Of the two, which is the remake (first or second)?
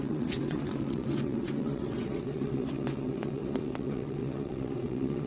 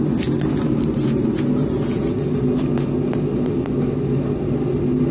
first